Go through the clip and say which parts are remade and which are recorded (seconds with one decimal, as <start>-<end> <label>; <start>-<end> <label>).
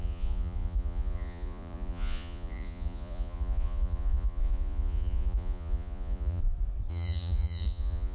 0.0-6.4 remade; 6.4-6.9 recorded; 6.9-8.1 remade